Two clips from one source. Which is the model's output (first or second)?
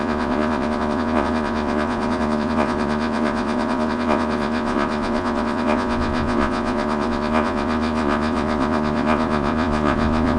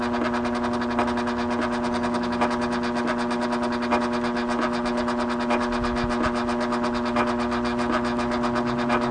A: first